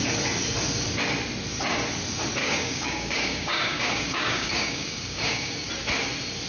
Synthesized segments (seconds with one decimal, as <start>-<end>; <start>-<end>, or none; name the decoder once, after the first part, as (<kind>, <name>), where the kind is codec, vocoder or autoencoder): 2.4-5.7 (codec, DAC)